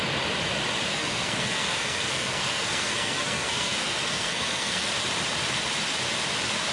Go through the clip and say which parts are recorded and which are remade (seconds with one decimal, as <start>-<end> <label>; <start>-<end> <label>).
0.0-0.9 recorded; 0.9-4.9 remade; 4.9-6.7 recorded